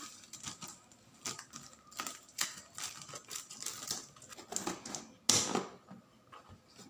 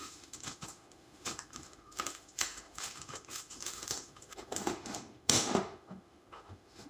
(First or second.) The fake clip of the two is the second